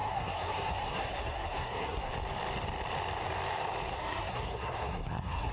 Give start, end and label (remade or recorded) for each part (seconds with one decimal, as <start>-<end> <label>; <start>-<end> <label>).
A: 0.0-2.1 remade; 2.1-3.9 recorded; 3.9-5.5 remade